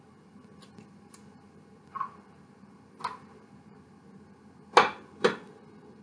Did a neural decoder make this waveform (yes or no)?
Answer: no